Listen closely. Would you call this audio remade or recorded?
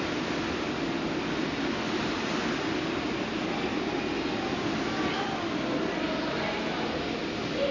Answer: recorded